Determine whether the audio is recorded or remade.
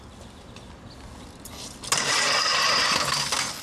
recorded